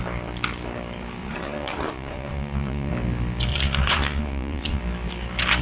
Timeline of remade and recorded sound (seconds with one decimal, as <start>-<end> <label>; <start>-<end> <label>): 0.0-1.2 recorded; 1.2-2.9 remade; 2.9-3.5 recorded; 3.5-4.8 remade; 4.8-5.6 recorded